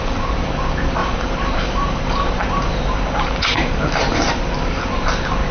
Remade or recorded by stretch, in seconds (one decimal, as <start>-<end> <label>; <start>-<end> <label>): 0.0-1.0 recorded; 1.0-4.3 remade; 4.3-5.5 recorded